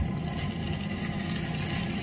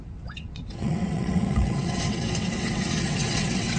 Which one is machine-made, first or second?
second